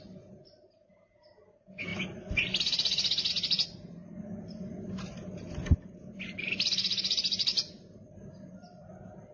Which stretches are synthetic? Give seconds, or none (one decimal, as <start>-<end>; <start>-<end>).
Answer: 7.5-8.9